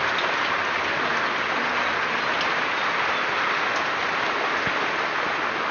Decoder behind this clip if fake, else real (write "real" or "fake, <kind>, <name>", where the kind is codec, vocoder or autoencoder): real